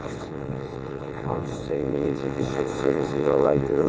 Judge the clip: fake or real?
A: fake